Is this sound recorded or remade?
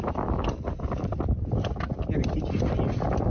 recorded